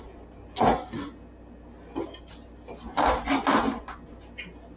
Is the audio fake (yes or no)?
no